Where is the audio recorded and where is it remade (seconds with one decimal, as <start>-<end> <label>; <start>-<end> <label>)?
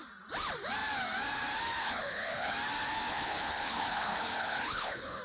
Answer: 0.0-1.8 recorded; 1.8-2.5 remade; 2.5-3.1 recorded; 3.1-5.2 remade